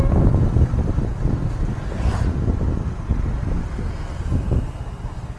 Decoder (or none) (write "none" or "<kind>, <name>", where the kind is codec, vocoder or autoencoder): none